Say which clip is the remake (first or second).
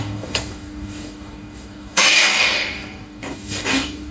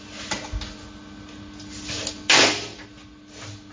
first